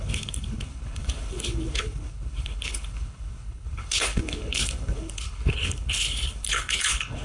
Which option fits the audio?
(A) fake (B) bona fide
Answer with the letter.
A